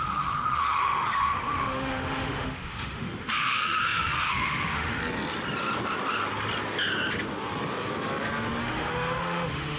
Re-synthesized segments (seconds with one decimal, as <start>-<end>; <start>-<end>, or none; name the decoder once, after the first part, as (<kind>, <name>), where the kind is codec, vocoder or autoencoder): 0.0-5.0 (autoencoder, DAC-VAE); 8.6-9.8